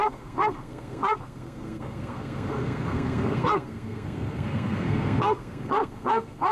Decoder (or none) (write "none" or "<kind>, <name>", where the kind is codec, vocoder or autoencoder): codec, SNAC